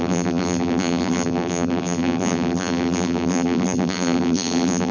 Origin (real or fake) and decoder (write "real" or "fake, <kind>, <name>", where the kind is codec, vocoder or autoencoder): fake, vocoder, BigVGAN v2